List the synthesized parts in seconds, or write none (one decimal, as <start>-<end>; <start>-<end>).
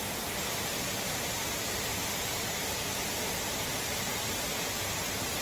1.9-5.4